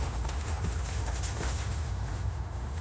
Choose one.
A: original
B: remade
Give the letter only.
B